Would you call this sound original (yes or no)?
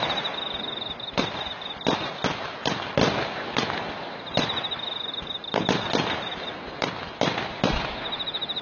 yes